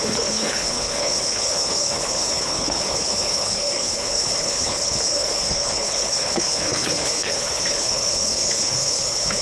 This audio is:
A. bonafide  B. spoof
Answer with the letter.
B